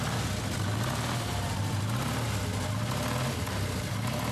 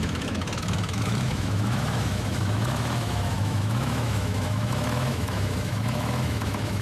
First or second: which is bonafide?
first